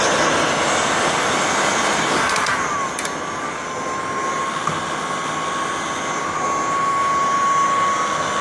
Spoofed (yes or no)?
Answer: no